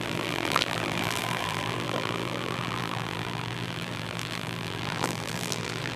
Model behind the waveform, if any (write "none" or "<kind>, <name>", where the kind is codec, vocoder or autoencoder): vocoder, BigVGAN v2